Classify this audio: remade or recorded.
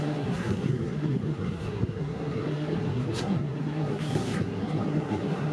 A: remade